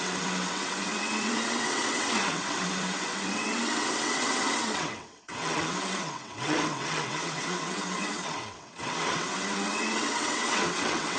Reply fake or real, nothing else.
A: fake